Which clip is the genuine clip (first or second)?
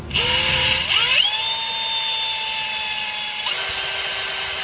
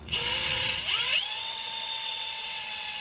first